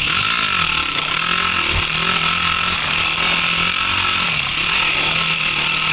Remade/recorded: recorded